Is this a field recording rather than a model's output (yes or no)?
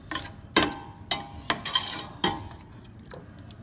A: yes